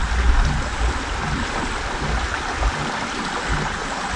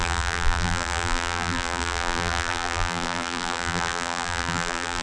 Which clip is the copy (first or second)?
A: second